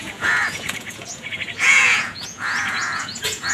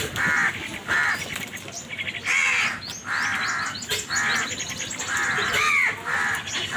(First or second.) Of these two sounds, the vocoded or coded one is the first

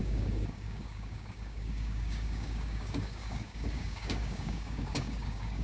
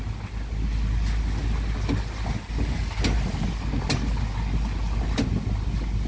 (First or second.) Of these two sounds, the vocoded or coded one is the first